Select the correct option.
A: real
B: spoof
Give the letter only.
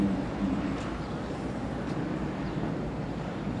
B